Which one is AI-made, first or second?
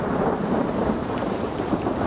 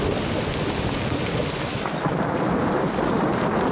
first